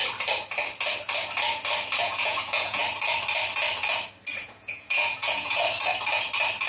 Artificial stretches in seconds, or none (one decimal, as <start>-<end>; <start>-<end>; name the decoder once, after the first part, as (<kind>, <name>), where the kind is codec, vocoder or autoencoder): 2.0-2.8 (vocoder, Vocos); 4.4-5.6